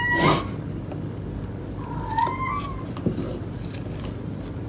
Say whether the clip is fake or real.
real